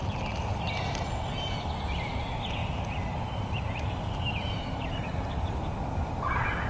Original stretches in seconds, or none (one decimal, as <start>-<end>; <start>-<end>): 0.0-2.6